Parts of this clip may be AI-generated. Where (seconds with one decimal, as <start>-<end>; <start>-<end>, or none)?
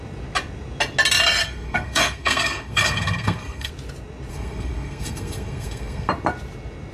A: 1.4-3.7; 4.3-6.1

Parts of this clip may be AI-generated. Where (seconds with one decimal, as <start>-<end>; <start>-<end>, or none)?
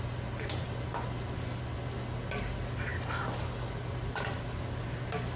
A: none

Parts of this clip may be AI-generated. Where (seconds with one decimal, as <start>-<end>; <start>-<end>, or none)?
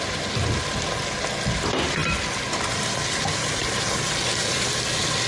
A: none